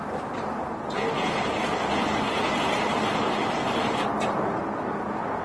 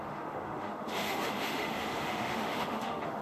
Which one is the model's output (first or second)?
second